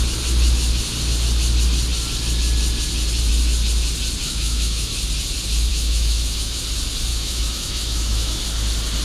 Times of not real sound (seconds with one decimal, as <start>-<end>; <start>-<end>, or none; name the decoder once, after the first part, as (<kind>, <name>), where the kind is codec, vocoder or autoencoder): 4.2-4.9 (autoencoder, DAC-VAE); 5.7-6.6; 7.1-8.4